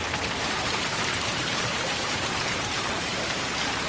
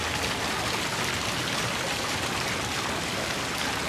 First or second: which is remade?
first